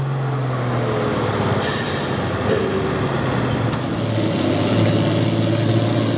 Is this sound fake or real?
real